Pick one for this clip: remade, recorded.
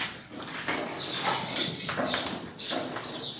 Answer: remade